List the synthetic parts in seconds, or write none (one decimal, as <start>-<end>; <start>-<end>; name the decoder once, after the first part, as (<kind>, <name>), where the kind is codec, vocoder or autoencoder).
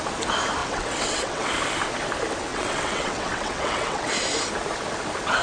0.6-1.5 (vocoder, WaveNeXt); 2.5-4.1